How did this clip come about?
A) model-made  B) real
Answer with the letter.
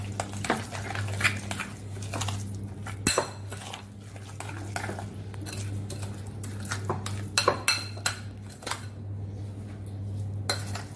B